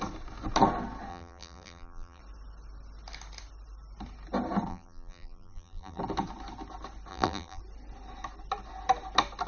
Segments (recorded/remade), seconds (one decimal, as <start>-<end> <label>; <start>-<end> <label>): 0.0-1.1 recorded; 1.1-2.2 remade; 2.2-4.7 recorded; 4.7-6.0 remade; 6.0-7.1 recorded; 7.1-7.6 remade; 7.6-9.5 recorded